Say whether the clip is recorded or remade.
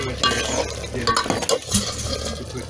recorded